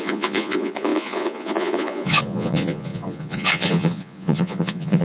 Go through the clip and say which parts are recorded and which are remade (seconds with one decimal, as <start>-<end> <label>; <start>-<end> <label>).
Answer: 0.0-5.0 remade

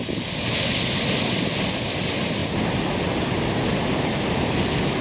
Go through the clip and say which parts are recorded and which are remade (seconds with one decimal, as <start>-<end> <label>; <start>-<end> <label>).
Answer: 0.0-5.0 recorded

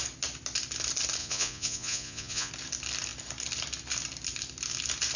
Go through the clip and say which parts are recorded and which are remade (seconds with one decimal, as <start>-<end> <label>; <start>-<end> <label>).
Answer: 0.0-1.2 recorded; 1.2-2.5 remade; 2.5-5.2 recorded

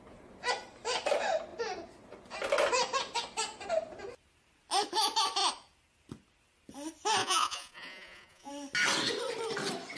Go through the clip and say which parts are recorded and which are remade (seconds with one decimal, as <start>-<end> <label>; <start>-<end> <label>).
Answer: 0.0-7.2 recorded; 7.2-8.5 remade; 8.5-10.0 recorded

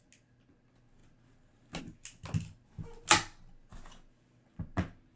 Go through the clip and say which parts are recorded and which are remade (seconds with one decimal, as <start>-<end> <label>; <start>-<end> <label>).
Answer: 0.0-5.2 recorded